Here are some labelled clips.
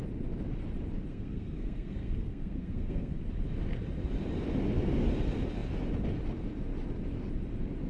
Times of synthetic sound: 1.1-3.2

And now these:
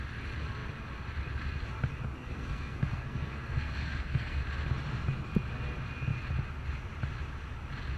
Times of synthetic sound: 2.2-4.4

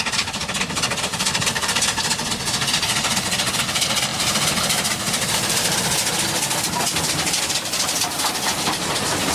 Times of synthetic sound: 1.1-1.7; 4.1-5.8; 6.9-7.9

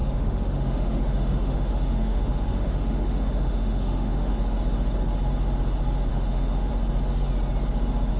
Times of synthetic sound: 0.0-4.3; 6.1-6.7

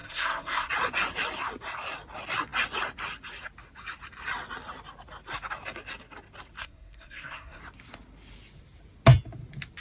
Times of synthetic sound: 0.0-0.7; 6.6-7.6

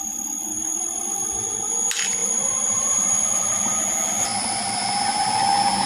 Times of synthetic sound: 0.5-1.0; 2.2-3.7; 4.3-4.9